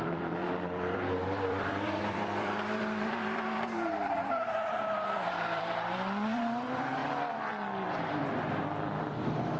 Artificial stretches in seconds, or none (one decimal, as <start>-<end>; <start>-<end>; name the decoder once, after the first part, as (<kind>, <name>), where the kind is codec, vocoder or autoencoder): 0.0-9.6 (vocoder, BigVGAN v2)